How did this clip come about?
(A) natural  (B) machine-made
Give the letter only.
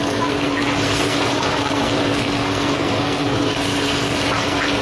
B